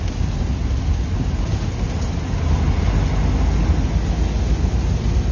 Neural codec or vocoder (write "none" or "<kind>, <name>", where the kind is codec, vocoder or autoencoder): none